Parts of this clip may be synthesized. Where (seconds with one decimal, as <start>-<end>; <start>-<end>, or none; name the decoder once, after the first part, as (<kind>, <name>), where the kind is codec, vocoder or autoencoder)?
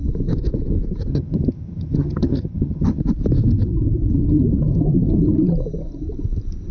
1.1-3.0 (vocoder, HiFi-GAN)